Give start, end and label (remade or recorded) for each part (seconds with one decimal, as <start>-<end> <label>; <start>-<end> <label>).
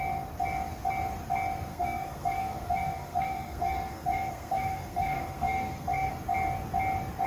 0.0-1.7 recorded; 1.7-6.1 remade; 6.1-7.3 recorded